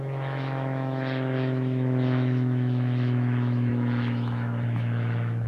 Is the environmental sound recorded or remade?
remade